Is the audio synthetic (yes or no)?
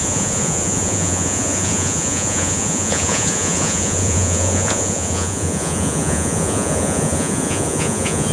yes